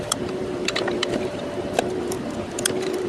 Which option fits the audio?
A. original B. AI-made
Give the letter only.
B